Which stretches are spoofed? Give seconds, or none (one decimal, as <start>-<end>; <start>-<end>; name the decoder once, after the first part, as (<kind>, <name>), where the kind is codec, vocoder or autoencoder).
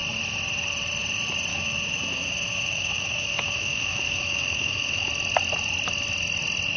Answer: 1.5-5.1 (autoencoder, DAC-VAE)